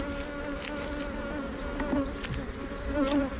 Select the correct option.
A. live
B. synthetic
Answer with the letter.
A